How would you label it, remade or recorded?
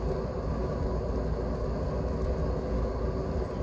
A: recorded